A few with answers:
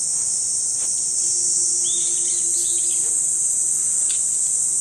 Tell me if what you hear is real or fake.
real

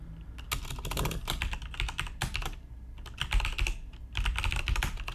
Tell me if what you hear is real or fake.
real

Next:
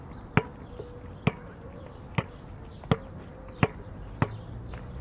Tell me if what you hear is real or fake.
real